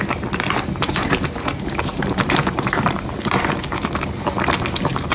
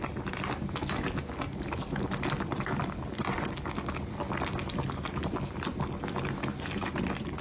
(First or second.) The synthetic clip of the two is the first